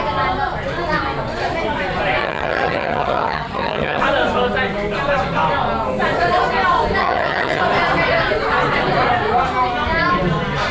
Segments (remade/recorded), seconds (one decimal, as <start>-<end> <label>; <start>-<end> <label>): 0.0-2.2 recorded; 2.2-4.0 remade; 4.0-7.0 recorded; 7.0-7.6 remade; 7.6-10.7 recorded